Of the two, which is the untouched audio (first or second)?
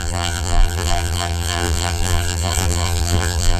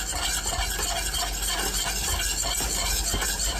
second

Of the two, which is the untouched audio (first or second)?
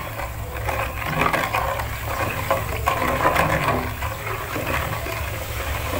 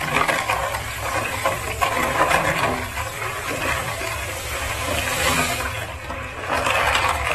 first